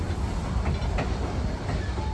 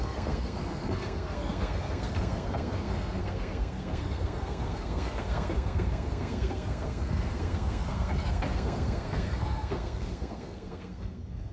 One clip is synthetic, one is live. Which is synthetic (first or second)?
second